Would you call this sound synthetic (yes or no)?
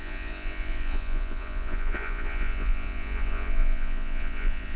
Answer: yes